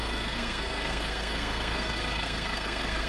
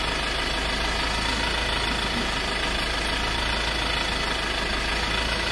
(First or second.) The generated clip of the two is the first